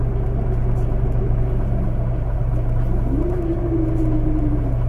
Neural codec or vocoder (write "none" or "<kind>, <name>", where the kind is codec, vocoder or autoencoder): none